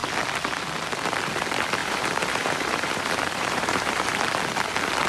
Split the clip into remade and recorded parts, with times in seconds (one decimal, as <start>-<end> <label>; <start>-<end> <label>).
0.0-1.8 recorded; 1.8-4.2 remade; 4.2-5.1 recorded